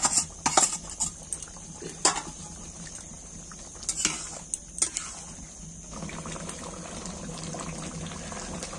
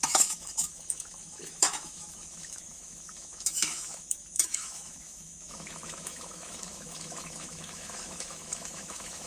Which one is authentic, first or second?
first